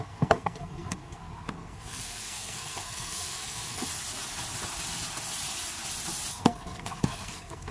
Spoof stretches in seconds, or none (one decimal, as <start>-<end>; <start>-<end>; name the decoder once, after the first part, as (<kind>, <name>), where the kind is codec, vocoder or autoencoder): 0.0-3.9 (codec, SNAC); 6.3-7.7